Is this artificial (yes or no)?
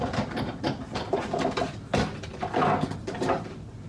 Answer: no